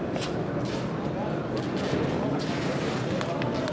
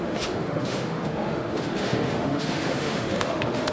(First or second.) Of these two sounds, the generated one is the second